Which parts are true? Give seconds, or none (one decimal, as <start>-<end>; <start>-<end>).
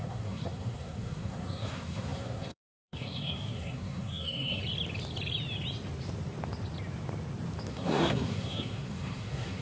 4.6-7.7